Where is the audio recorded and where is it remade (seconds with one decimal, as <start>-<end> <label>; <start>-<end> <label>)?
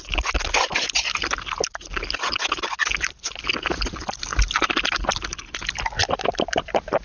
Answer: 0.0-7.0 recorded